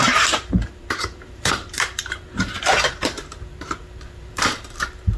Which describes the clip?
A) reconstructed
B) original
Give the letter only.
A